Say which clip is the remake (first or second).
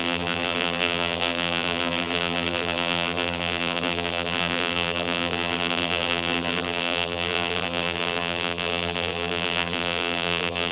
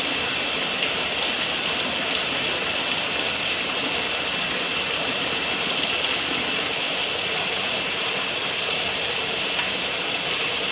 first